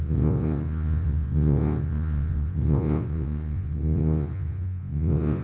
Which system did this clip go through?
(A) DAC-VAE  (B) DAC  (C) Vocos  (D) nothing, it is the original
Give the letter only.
C